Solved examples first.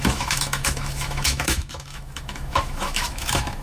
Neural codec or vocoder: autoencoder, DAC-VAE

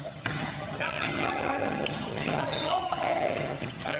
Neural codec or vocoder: vocoder, HiFi-GAN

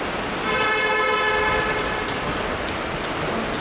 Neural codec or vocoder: none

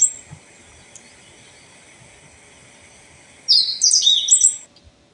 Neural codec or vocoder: none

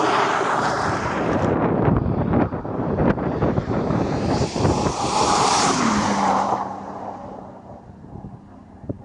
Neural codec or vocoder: vocoder, BigVGAN v2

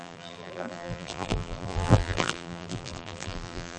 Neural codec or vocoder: vocoder, BigVGAN v2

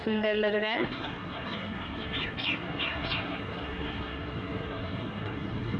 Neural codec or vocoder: codec, SNAC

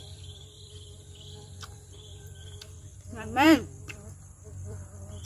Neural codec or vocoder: vocoder, BigVGAN v2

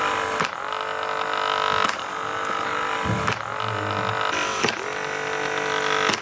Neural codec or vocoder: none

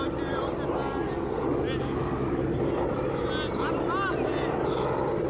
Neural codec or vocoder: none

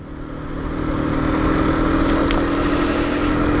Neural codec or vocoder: none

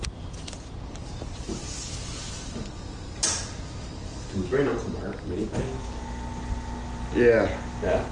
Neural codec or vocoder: none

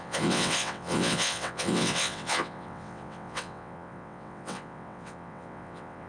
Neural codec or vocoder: vocoder, WaveNeXt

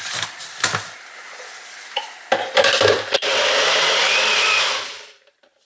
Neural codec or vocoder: none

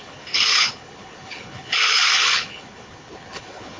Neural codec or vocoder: codec, HILCodec